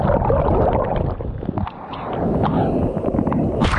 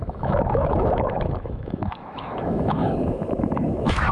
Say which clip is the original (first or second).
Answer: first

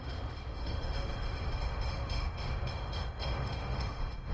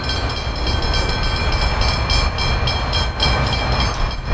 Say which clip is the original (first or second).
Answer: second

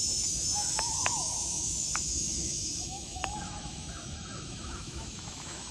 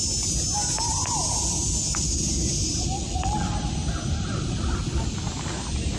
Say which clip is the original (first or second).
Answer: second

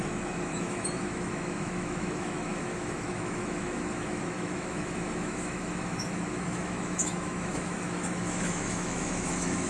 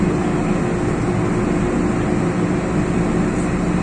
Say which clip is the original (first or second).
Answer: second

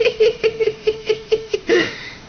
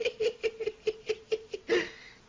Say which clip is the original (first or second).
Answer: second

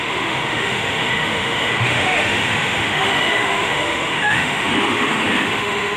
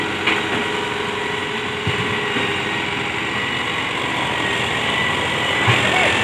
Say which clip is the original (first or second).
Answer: second